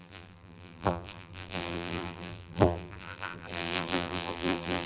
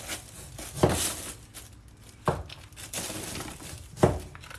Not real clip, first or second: first